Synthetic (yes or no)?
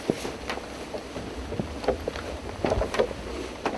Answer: no